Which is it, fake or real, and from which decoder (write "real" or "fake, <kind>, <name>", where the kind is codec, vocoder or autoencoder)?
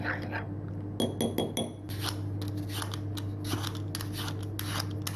real